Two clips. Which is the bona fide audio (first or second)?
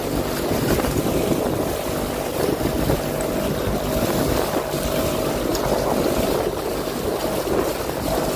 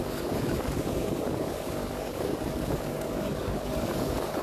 first